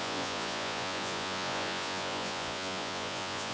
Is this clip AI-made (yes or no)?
yes